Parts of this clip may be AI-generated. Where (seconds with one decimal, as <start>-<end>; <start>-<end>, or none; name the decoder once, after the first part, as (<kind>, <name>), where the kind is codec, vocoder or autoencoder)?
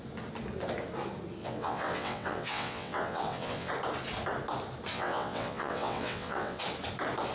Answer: 1.4-3.7 (vocoder, WaveNeXt); 4.9-6.6